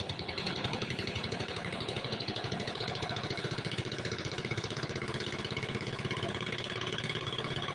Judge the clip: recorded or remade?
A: remade